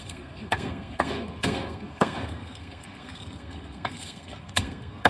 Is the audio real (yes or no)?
no